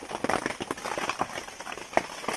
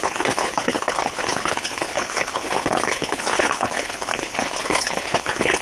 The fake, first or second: second